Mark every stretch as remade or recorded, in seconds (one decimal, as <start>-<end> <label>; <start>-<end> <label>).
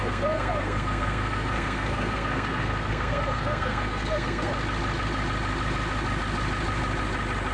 0.0-4.5 remade; 4.5-7.5 recorded